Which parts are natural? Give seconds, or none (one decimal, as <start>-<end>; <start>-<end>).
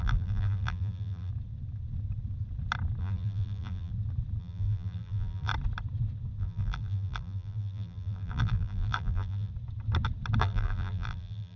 1.3-3.0; 3.9-4.4; 5.5-6.4; 9.5-10.4